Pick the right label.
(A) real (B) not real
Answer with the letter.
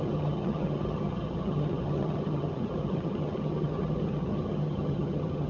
B